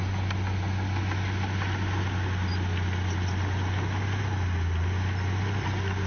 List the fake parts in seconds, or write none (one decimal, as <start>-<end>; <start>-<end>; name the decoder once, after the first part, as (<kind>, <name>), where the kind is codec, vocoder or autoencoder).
none

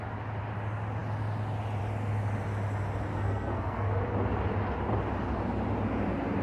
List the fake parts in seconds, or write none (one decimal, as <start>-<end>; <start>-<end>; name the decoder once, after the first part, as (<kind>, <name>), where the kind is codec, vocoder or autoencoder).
3.1-4.0 (codec, SNAC)

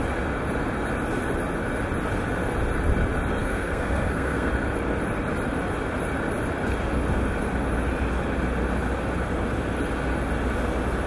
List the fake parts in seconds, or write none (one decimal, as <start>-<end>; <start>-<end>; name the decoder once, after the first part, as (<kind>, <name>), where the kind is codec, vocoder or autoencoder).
3.4-4.5 (codec, SNAC)

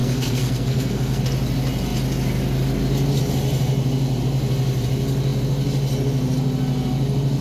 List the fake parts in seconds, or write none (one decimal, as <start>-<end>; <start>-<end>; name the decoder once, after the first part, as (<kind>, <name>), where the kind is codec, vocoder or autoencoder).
0.0-1.2 (codec, SNAC)

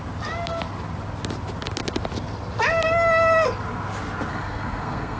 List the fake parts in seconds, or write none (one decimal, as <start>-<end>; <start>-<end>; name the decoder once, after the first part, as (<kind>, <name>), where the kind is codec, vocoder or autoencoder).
4.3-5.2 (codec, SNAC)